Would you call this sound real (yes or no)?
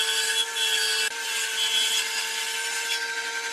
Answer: yes